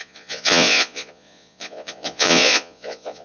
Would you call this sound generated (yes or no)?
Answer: yes